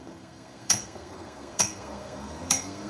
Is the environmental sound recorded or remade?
remade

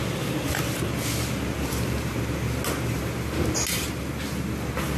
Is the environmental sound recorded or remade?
recorded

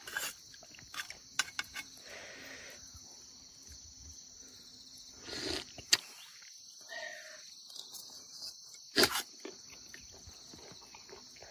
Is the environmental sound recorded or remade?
recorded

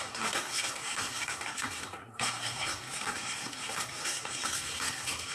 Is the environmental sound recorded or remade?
remade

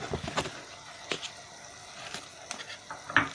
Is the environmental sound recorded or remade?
recorded